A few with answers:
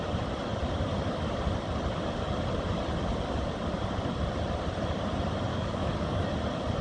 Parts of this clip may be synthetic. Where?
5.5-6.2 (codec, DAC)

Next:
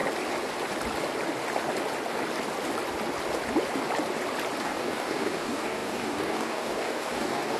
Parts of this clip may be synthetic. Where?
4.6-7.6 (codec, DAC)

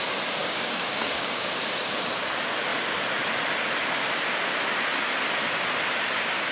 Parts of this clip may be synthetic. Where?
0.4-1.5 (codec, DAC)

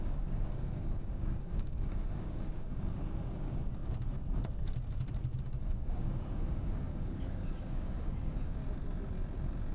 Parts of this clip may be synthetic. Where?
0.0-3.8 (codec, DAC); 5.4-8.6